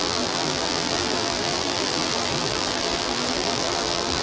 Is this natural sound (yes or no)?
no